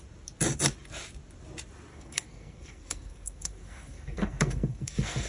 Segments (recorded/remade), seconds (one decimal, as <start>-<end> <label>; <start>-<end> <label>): 0.0-1.9 recorded; 1.9-5.3 remade